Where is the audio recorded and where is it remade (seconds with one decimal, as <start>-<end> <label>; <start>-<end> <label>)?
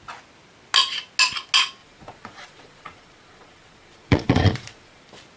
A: 0.0-1.8 recorded; 1.8-5.0 remade; 5.0-5.4 recorded